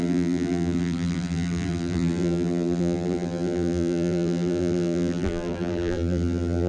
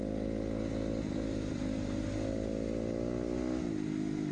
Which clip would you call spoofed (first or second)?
first